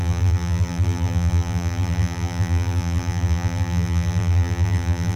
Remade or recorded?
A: remade